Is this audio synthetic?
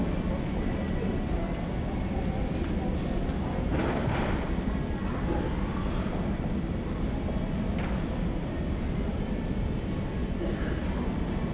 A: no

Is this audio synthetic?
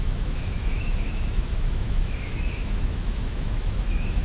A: yes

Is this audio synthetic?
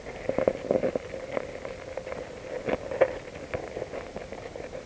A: no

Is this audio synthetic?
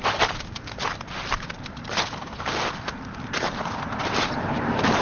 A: yes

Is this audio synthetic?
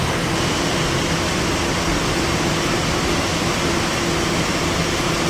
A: no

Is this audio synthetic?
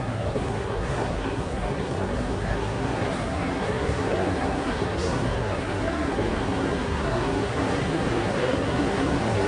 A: yes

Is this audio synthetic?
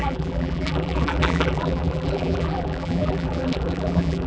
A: yes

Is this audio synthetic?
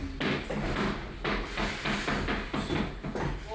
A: no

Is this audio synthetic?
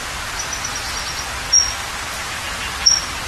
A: no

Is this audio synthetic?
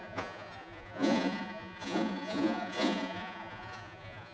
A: yes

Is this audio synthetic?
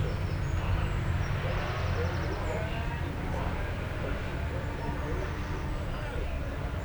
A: no